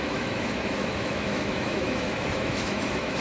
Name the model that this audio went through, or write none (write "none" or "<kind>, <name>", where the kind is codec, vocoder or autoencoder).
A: autoencoder, DAC-VAE